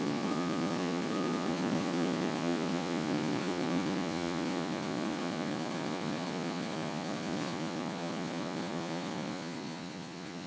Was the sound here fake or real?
fake